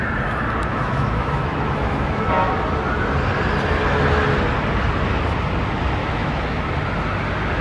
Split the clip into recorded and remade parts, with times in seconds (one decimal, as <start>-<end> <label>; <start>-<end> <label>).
0.0-0.7 recorded; 0.7-2.5 remade; 2.5-6.0 recorded; 6.0-6.6 remade; 6.6-7.6 recorded